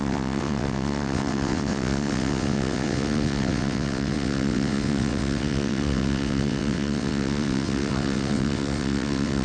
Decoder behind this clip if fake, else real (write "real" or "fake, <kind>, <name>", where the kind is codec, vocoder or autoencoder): fake, vocoder, WaveNeXt